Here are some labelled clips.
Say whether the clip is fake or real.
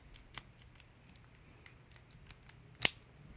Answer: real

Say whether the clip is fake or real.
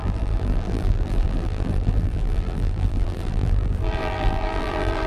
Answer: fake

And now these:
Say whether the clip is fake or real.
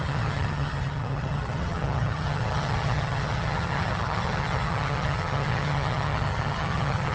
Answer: fake